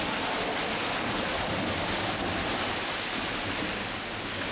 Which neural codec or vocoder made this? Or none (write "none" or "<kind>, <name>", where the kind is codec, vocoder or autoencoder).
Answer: none